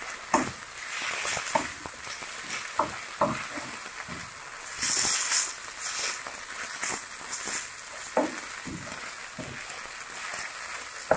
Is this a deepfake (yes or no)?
no